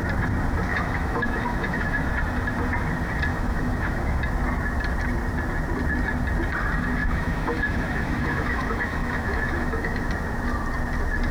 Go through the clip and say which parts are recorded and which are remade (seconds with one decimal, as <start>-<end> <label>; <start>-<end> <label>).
0.0-0.7 recorded; 0.7-2.1 remade; 2.1-3.3 recorded; 3.3-4.2 remade; 4.2-7.0 recorded; 7.0-10.1 remade; 10.1-11.3 recorded